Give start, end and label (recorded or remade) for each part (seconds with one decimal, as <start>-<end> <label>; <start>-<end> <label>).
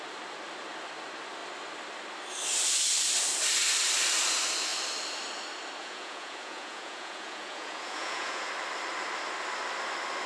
0.0-5.8 recorded; 5.8-8.5 remade; 8.5-10.3 recorded